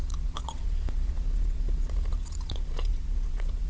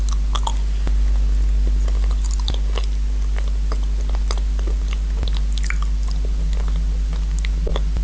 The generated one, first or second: first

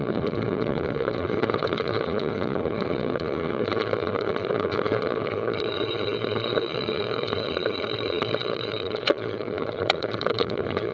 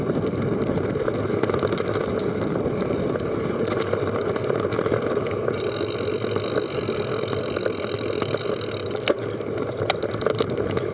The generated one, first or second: first